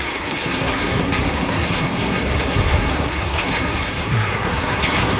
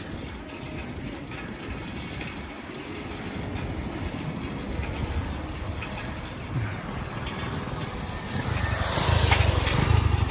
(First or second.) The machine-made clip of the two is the first